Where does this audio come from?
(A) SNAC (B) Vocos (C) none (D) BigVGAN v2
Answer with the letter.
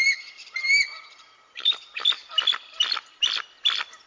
D